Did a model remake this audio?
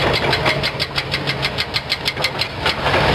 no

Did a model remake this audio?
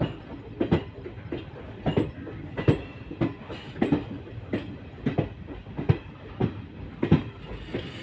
no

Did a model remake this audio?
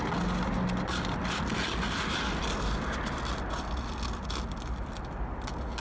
no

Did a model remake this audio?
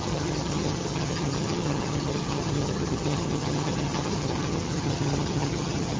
yes